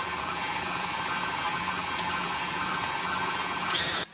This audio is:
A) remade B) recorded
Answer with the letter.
A